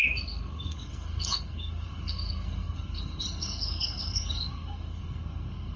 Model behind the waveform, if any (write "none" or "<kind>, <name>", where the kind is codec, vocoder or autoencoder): codec, SNAC